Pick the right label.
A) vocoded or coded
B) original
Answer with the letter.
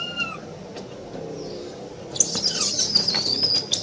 B